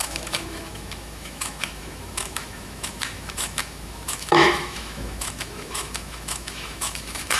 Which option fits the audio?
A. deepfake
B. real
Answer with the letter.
A